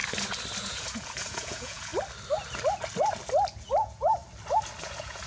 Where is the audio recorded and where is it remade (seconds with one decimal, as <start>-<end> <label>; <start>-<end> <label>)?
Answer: 0.0-0.6 recorded; 0.6-1.9 remade; 1.9-3.5 recorded; 3.5-4.2 remade; 4.2-4.8 recorded; 4.8-5.3 remade